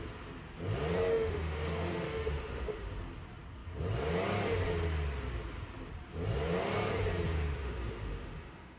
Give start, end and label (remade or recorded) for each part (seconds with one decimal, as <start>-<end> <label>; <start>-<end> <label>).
0.0-1.1 recorded; 1.1-2.9 remade; 2.9-7.6 recorded; 7.6-8.8 remade